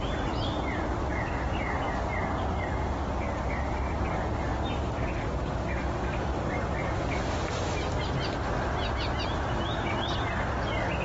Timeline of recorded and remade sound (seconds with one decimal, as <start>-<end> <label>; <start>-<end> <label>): 0.0-11.0 recorded